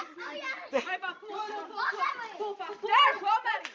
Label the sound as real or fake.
real